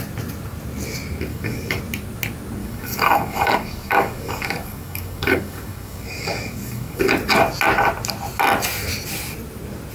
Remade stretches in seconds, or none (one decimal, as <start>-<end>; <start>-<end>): 1.3-1.8; 2.6-7.0